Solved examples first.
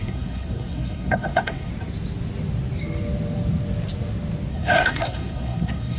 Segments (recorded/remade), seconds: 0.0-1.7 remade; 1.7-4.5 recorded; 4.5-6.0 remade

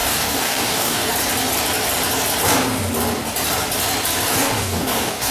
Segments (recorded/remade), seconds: 0.0-1.1 remade; 1.1-4.3 recorded; 4.3-5.3 remade

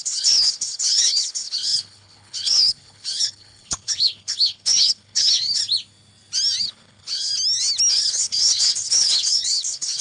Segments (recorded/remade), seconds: 0.0-5.6 remade; 5.6-6.6 recorded; 6.6-7.3 remade; 7.3-7.9 recorded; 7.9-10.0 remade

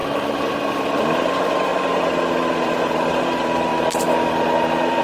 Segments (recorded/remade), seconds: 0.0-0.8 recorded; 0.8-3.7 remade; 3.7-5.0 recorded